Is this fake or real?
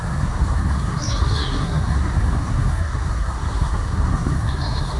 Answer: fake